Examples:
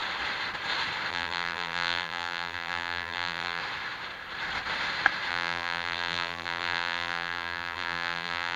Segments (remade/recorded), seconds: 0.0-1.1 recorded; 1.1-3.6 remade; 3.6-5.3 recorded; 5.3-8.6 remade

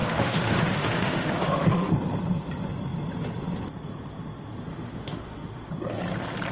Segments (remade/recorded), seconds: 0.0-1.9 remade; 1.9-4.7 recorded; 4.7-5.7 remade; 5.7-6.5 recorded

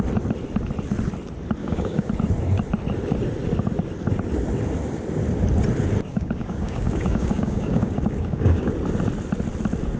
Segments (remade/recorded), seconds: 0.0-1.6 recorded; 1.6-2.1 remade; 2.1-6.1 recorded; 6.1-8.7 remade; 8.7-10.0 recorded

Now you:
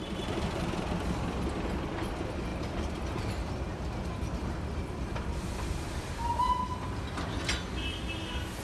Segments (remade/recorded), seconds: 0.0-0.6 remade; 0.6-2.5 recorded; 2.5-6.1 remade; 6.1-8.6 recorded

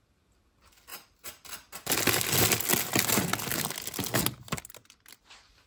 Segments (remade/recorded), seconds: 0.0-0.9 recorded; 0.9-1.5 remade; 1.5-5.7 recorded